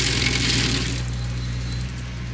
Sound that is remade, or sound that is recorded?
recorded